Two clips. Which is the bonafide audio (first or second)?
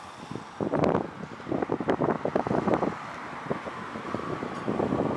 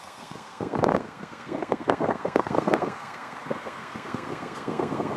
first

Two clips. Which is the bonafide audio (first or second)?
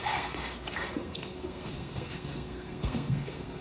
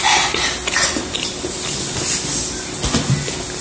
second